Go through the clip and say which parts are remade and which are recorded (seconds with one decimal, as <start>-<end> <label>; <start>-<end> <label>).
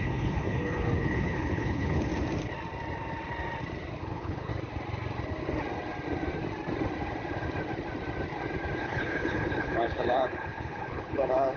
0.0-2.1 remade; 2.1-4.0 recorded; 4.0-4.5 remade; 4.5-8.8 recorded; 8.8-11.6 remade